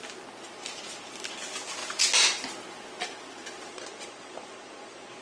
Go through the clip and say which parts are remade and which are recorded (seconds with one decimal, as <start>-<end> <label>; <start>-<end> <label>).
0.0-3.7 recorded; 3.7-5.2 remade